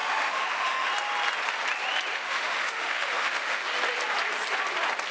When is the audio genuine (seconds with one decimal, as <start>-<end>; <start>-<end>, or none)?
0.9-2.1; 3.6-5.1